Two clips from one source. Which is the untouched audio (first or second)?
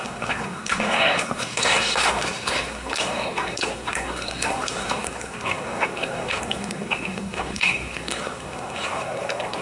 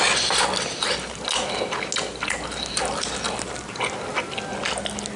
second